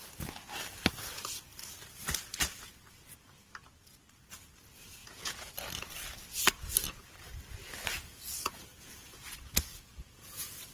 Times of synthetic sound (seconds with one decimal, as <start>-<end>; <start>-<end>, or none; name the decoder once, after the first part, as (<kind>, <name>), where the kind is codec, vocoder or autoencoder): 5.0-5.5 (vocoder, Vocos); 7.9-10.7